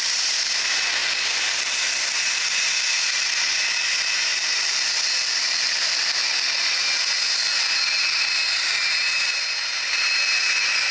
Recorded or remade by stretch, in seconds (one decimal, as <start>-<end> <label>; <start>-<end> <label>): 0.0-4.3 recorded; 4.3-5.4 remade; 5.4-10.9 recorded